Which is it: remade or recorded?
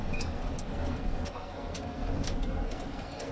remade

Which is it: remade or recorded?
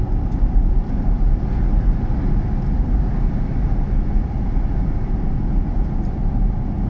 recorded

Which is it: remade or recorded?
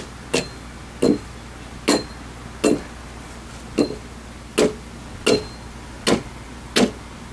recorded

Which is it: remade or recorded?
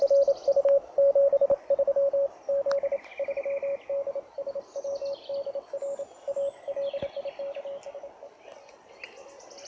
recorded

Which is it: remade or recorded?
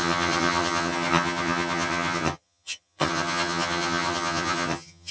remade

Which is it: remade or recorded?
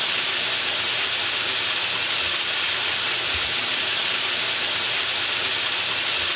recorded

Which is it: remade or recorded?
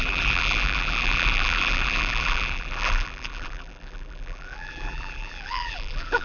remade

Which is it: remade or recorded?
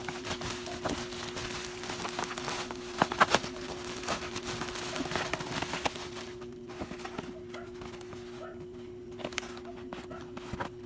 recorded